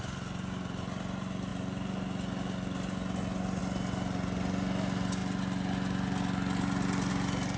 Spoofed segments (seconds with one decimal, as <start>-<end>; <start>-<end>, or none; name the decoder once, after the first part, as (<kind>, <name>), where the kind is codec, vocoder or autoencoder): none